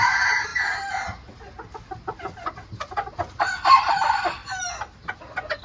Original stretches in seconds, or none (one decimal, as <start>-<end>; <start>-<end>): 0.0-5.6